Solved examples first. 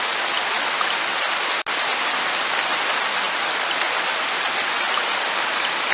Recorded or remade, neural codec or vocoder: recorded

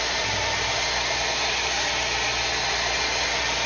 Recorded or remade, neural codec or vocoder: recorded